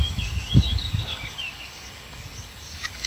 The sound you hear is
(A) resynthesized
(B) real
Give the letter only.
A